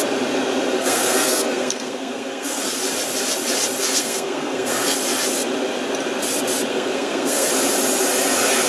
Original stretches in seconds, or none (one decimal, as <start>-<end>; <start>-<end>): 0.0-0.8; 2.8-3.8; 5.0-6.7; 7.5-8.7